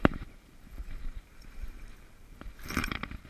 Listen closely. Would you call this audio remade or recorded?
remade